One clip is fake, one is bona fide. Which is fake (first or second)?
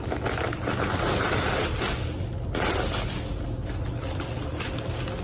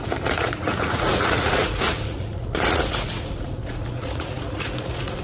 second